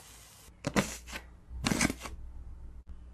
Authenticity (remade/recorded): recorded